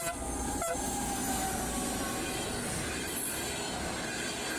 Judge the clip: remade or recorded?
recorded